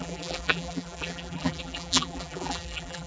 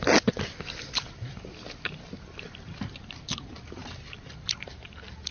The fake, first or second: first